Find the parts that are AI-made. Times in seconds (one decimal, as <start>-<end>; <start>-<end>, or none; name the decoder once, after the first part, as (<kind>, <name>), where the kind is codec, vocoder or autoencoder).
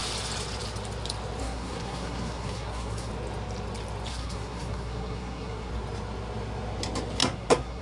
1.4-3.1 (codec, SNAC); 4.1-5.7; 7.2-7.8